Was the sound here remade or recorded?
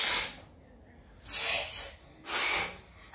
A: recorded